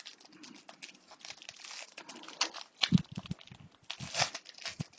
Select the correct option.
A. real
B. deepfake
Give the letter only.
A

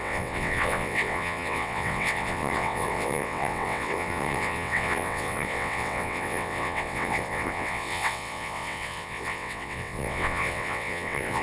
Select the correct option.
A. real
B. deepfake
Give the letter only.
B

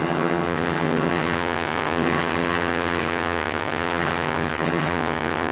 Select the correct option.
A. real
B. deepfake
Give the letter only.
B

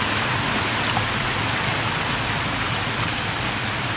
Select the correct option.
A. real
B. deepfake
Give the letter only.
A